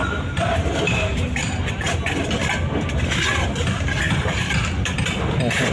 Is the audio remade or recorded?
recorded